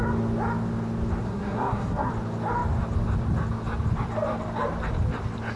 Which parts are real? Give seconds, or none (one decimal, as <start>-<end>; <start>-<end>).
0.0-1.2; 2.1-5.6